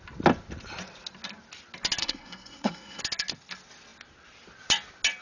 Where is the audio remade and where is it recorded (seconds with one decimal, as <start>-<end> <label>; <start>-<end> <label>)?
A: 0.0-2.0 recorded; 2.0-3.0 remade; 3.0-5.2 recorded